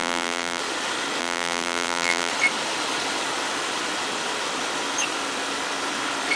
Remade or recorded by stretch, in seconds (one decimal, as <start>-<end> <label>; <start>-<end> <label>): 0.0-0.6 remade; 0.6-1.2 recorded; 1.2-2.3 remade; 2.3-6.4 recorded